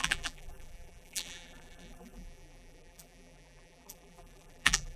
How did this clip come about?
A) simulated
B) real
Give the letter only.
A